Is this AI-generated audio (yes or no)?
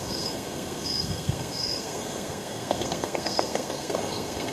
yes